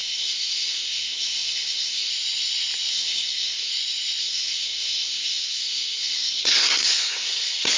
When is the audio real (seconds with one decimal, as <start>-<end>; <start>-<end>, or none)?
2.1-2.9; 3.7-4.2

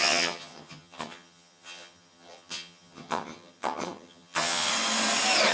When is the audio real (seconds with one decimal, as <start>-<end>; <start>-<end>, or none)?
4.7-5.5